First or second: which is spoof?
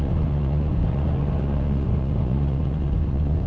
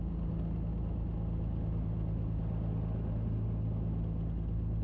first